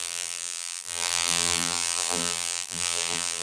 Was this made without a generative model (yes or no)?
no